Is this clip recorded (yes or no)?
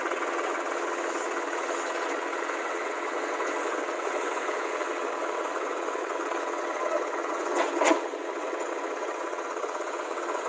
no